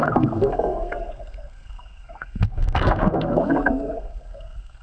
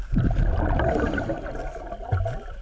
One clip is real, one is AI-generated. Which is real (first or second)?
second